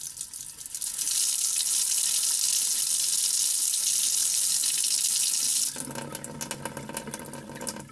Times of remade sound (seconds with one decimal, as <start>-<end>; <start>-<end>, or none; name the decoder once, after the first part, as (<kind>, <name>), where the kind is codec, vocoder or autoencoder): none

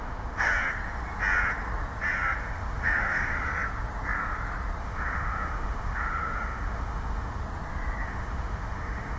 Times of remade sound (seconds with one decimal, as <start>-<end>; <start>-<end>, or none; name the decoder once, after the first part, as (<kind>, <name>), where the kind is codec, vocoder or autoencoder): 0.0-0.5 (autoencoder, DAC-VAE); 2.4-3.5; 4.8-7.4; 8.0-9.2

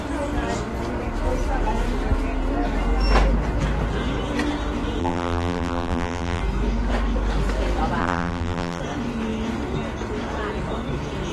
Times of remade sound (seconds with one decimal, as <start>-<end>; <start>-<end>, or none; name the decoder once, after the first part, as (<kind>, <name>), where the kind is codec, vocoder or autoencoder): 5.0-6.4 (vocoder, BigVGAN v2); 8.0-8.8

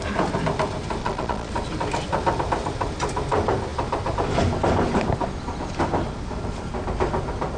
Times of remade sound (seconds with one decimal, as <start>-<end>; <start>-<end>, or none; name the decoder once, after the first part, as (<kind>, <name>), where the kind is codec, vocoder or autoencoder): 1.0-1.5 (vocoder, Vocos)

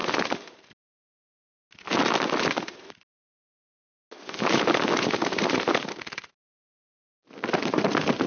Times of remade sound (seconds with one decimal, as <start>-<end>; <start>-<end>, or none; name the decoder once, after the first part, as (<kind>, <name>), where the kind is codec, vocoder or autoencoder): none

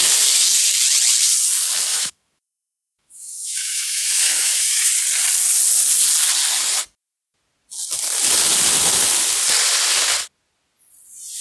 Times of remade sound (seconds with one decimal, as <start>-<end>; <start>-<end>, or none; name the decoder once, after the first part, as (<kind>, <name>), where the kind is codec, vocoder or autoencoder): 1.9-4.9 (autoencoder, DAC-VAE)

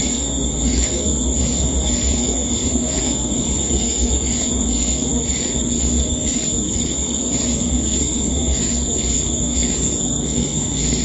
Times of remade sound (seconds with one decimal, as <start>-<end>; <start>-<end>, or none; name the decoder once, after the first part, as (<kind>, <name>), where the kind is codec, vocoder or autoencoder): 0.0-11.0 (codec, SNAC)

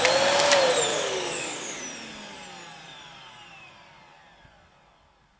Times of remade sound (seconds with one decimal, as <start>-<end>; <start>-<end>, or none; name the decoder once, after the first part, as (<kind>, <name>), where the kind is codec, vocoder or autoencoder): 0.9-1.8 (codec, DAC)